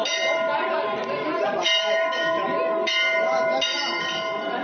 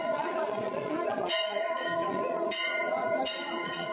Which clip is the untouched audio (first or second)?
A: first